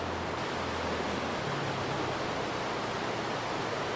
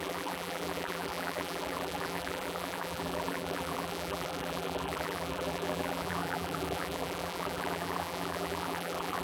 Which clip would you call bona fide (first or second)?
first